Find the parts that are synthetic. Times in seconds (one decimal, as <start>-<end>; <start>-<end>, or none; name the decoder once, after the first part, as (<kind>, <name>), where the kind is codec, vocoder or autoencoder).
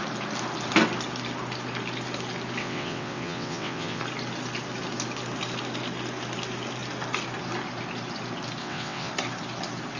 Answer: 2.6-4.0 (vocoder, WaveNeXt); 8.6-9.1